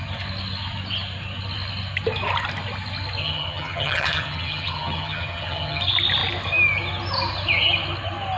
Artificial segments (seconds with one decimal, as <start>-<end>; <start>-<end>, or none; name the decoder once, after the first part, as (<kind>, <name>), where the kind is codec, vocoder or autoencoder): 3.2-5.8 (vocoder, HiFi-GAN)